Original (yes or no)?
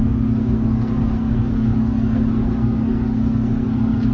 no